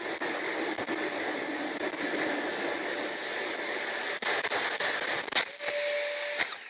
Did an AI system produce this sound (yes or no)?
no